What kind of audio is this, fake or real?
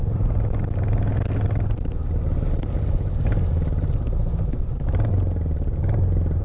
real